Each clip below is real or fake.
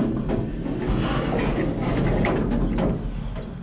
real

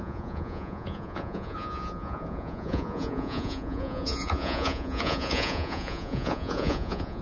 fake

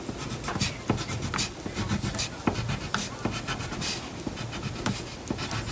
real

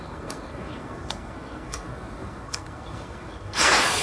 fake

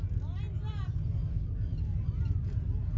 real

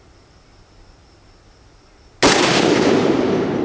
real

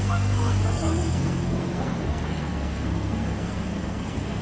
fake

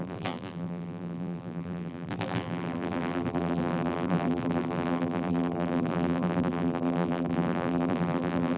fake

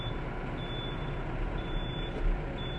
real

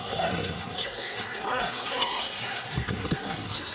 fake